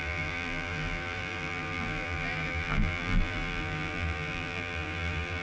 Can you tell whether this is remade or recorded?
remade